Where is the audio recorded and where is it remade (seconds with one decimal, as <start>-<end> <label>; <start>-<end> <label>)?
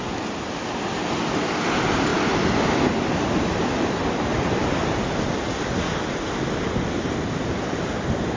0.0-8.4 recorded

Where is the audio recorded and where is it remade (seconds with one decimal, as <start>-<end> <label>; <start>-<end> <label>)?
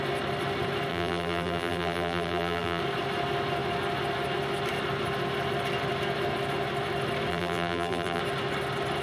0.0-0.9 recorded; 0.9-2.8 remade; 2.8-7.3 recorded; 7.3-8.2 remade; 8.2-9.0 recorded